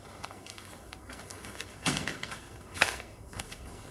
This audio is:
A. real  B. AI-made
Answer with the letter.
B